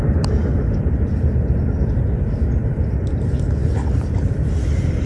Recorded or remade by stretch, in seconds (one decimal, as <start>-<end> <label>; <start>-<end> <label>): 0.0-3.6 recorded; 3.6-5.1 remade